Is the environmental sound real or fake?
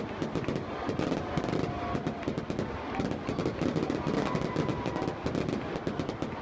real